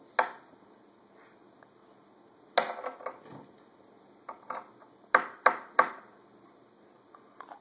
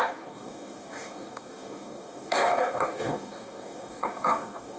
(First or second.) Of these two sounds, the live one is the first